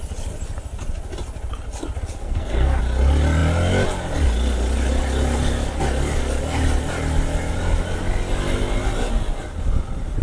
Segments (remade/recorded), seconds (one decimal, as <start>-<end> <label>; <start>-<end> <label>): 0.0-2.2 recorded; 2.2-2.8 remade; 2.8-10.2 recorded